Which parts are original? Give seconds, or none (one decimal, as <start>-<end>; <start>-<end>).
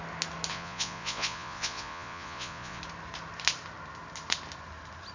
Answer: 0.0-0.5; 2.8-5.1